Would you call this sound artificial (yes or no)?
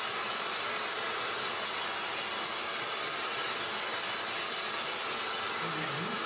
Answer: no